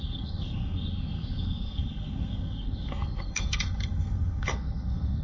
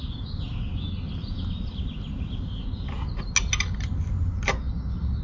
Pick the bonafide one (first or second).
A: second